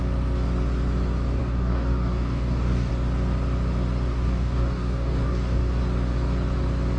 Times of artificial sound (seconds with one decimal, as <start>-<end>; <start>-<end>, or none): 1.4-2.9; 4.1-5.8

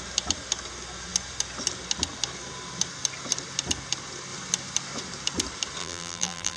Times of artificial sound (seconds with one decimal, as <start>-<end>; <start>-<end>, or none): 5.8-6.6

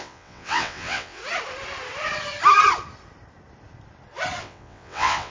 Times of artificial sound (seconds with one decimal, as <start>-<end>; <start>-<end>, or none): 0.0-1.2; 4.4-5.3

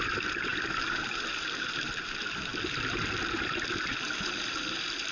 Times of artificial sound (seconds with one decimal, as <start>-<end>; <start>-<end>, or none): none

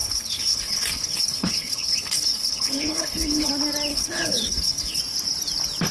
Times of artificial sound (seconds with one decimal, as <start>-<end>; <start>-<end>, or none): 0.0-3.5; 3.9-5.0

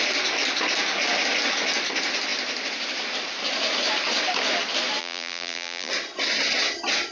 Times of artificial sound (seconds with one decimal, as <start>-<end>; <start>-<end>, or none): 5.0-5.9

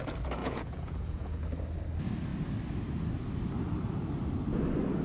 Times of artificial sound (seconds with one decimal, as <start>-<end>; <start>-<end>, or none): 0.4-1.4

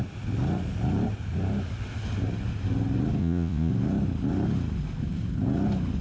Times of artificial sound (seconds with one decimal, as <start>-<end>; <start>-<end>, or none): 3.2-3.7